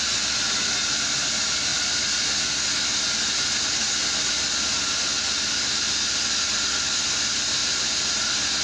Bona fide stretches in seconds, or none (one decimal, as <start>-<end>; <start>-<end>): 0.0-8.6